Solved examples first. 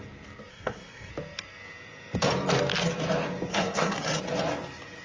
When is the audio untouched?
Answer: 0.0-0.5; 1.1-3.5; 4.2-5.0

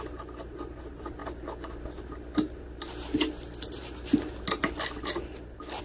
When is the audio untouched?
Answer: 0.0-1.2; 3.8-4.6

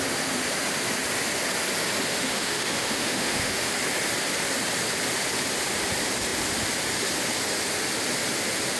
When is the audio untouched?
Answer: 0.0-2.1; 3.7-8.8

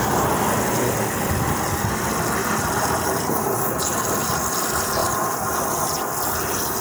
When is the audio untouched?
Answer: 0.0-6.8

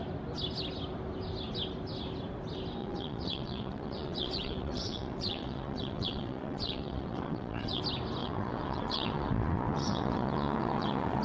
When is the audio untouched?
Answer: 0.0-2.8; 7.8-8.2

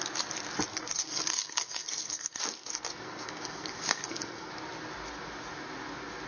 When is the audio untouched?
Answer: 0.0-0.7; 4.5-6.3